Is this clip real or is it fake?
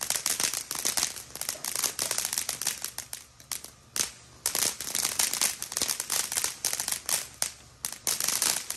real